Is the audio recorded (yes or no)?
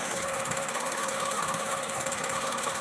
no